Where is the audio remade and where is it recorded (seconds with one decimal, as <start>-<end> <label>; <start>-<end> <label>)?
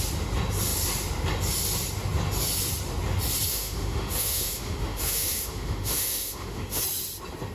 0.0-3.5 recorded; 3.5-6.8 remade; 6.8-7.5 recorded